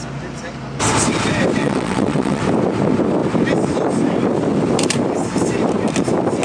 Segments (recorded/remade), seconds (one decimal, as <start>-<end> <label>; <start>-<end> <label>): 0.0-1.6 recorded; 1.6-2.4 remade; 2.4-6.4 recorded